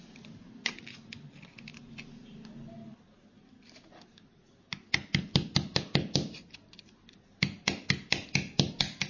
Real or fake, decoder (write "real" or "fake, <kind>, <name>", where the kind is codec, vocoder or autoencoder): real